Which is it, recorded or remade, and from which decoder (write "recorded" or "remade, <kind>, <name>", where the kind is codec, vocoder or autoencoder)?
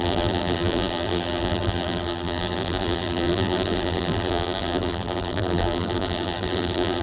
remade, vocoder, BigVGAN v2